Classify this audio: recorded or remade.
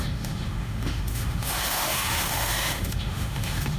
remade